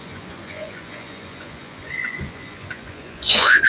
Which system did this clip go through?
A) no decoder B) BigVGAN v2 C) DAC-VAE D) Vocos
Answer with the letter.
D